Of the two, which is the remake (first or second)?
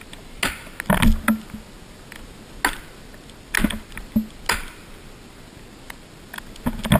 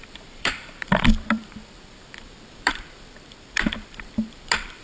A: second